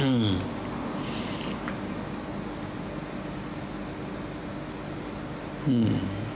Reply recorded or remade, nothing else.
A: recorded